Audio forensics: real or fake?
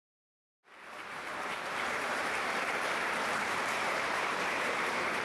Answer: fake